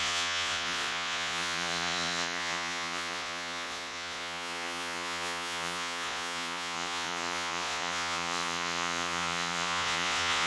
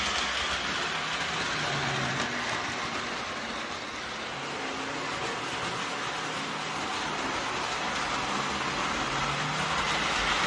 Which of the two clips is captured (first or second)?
second